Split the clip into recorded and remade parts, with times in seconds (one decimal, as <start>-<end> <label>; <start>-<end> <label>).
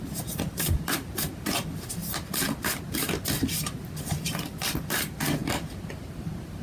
0.0-2.0 remade; 2.0-4.2 recorded; 4.2-5.4 remade; 5.4-6.1 recorded; 6.1-6.6 remade